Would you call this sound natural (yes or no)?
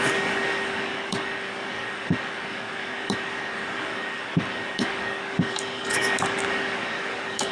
no